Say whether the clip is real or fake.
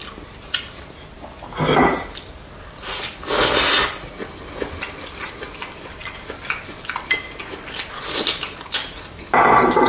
real